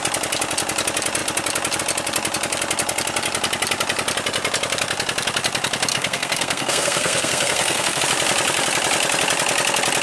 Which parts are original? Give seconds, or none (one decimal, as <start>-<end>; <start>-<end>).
0.0-5.9; 8.0-10.0